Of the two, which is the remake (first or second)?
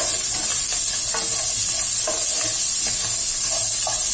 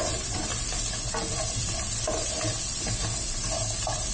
second